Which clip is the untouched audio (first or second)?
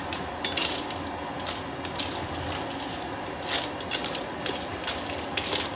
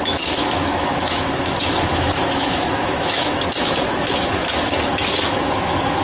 first